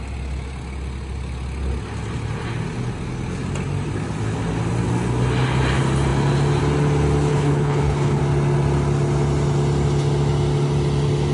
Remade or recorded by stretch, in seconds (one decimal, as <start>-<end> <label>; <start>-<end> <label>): 0.0-7.3 recorded; 7.3-8.2 remade; 8.2-11.3 recorded